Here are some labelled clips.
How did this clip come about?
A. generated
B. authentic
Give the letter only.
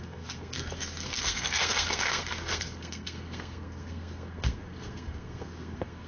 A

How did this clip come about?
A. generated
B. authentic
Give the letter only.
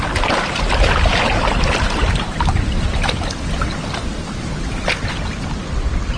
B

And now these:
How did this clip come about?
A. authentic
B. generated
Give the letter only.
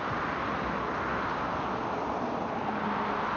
A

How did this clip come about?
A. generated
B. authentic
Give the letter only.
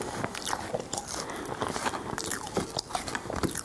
B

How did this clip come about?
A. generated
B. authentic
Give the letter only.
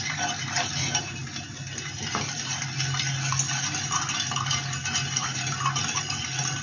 B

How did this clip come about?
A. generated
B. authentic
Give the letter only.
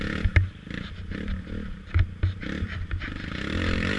B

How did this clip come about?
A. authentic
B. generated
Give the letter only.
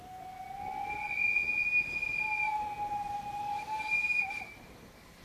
A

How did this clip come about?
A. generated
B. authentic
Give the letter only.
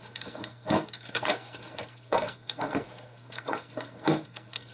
A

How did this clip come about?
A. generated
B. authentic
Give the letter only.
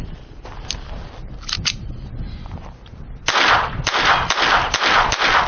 B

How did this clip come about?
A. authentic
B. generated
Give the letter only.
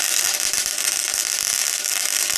A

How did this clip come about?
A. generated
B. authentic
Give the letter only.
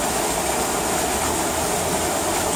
B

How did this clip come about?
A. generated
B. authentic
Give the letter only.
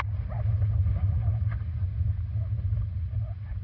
B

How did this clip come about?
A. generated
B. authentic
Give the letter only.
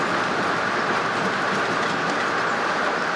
B